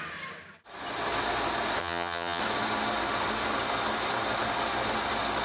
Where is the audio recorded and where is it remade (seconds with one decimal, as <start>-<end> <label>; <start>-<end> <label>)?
0.0-1.8 recorded; 1.8-2.4 remade; 2.4-5.4 recorded